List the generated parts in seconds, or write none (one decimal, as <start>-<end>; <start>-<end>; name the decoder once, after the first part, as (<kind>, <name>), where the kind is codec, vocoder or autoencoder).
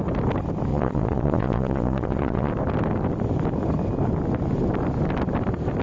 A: 0.7-2.5 (vocoder, Vocos)